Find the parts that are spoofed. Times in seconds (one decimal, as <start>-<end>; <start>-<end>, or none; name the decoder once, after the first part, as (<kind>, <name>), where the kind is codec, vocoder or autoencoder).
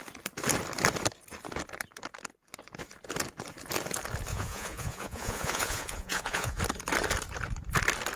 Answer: 4.3-6.6 (vocoder, Vocos)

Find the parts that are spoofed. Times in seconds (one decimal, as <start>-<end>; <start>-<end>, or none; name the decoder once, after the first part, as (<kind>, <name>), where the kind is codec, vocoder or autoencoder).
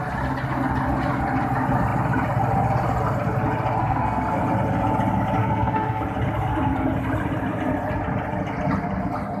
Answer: 3.8-4.4 (codec, SNAC); 5.4-6.0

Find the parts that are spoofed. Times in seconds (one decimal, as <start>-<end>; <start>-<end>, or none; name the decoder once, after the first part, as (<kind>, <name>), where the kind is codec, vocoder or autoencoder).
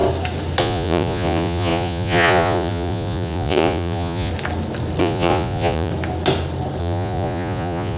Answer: 0.6-4.3 (vocoder, Vocos); 5.0-5.9; 6.8-8.0